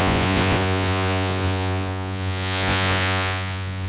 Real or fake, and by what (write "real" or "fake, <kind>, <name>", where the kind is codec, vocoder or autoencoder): fake, vocoder, Vocos